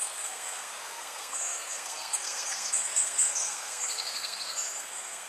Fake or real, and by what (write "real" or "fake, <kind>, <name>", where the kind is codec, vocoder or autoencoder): fake, codec, SNAC